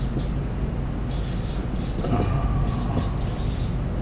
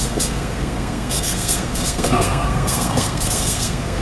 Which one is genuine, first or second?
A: first